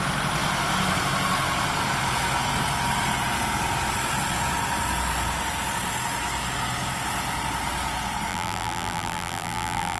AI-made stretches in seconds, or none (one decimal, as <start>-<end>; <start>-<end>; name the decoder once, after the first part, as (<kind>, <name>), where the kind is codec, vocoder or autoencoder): 8.3-10.0 (vocoder, BigVGAN v2)